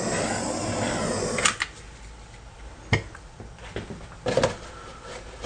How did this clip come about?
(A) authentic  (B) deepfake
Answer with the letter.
A